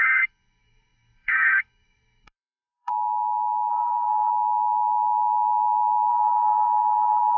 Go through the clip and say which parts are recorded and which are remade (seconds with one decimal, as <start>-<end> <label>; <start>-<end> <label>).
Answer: 0.0-2.9 remade; 2.9-3.7 recorded; 3.7-4.3 remade; 4.3-6.1 recorded; 6.1-7.4 remade